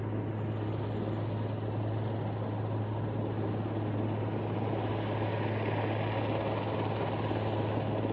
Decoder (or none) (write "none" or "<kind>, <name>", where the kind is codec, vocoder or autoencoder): none